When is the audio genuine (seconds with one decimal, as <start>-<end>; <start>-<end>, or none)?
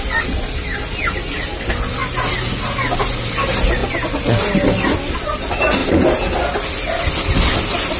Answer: 0.0-8.0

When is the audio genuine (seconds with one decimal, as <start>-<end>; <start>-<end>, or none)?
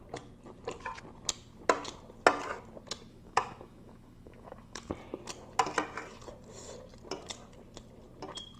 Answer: 0.0-3.1; 4.9-8.6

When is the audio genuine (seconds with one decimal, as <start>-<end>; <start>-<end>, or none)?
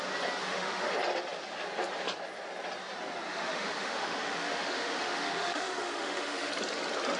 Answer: 0.0-0.4; 0.9-3.3; 6.5-7.2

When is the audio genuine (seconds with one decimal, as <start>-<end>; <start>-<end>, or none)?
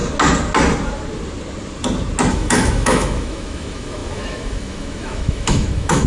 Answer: 0.0-2.3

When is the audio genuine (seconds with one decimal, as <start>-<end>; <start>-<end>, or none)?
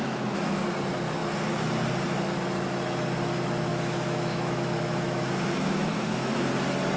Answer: 0.6-3.7; 6.5-7.0